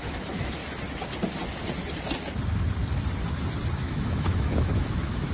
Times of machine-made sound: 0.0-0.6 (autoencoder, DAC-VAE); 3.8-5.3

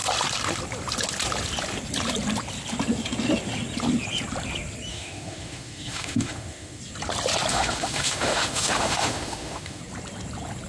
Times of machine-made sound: 4.9-6.8 (autoencoder, DAC-VAE); 7.5-9.8

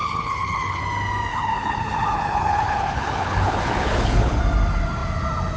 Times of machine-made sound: 0.0-0.8 (codec, HILCodec); 1.3-4.4

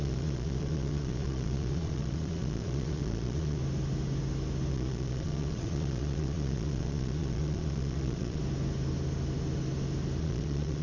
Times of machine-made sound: 0.0-3.6 (vocoder, Vocos); 4.7-8.4; 10.2-10.8

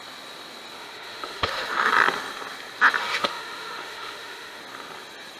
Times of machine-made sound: 0.8-1.9 (autoencoder, DAC-VAE); 3.0-4.6

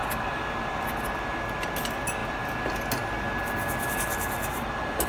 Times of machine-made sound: none

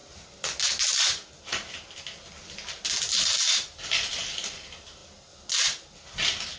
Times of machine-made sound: none

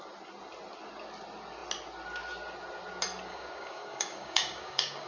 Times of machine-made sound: 3.3-5.1 (codec, DAC)